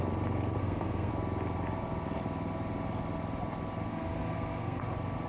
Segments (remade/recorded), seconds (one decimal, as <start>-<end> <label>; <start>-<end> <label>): 0.0-0.6 recorded; 0.6-1.1 remade; 1.1-3.9 recorded; 3.9-4.8 remade; 4.8-5.3 recorded